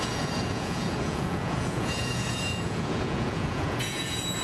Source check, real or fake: fake